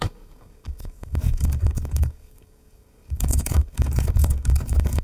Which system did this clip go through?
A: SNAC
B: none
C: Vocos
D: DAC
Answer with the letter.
D